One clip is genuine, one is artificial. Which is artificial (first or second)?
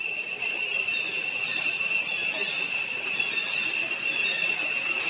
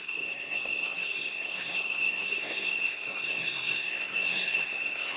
second